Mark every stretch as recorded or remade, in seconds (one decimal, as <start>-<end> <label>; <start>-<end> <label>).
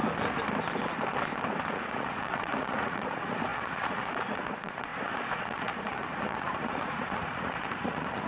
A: 0.0-1.7 recorded; 1.7-8.3 remade